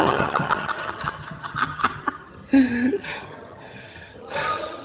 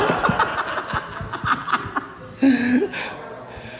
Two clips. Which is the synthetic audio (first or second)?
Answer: first